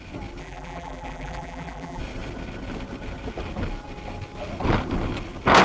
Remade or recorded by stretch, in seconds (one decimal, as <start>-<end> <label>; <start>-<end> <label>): 0.0-0.4 recorded; 0.4-2.0 remade; 2.0-5.6 recorded